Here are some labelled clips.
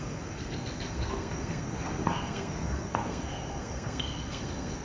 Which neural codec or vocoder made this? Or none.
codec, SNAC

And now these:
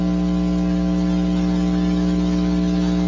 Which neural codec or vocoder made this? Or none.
none